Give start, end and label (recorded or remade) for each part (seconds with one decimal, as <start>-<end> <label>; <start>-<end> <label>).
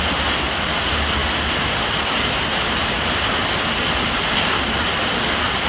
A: 0.0-5.7 recorded